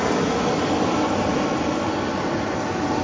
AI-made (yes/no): no